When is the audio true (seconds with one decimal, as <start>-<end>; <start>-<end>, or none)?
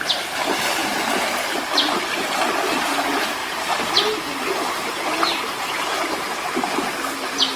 0.0-3.4; 3.9-4.6; 6.9-7.6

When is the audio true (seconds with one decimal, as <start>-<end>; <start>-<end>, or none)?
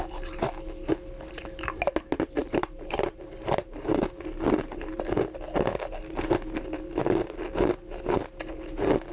0.0-2.4; 3.9-9.1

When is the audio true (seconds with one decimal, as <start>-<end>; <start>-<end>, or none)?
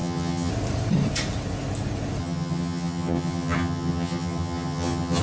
0.5-2.2